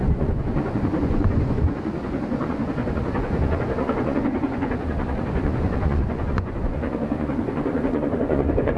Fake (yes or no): yes